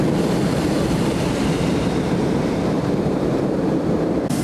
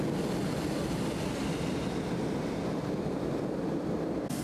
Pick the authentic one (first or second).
second